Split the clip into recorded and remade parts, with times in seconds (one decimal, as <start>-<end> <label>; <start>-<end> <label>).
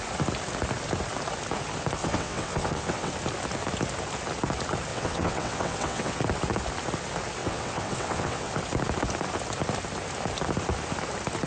0.0-2.0 recorded; 2.0-3.1 remade; 3.1-4.9 recorded; 4.9-6.2 remade; 6.2-7.4 recorded; 7.4-8.5 remade; 8.5-11.5 recorded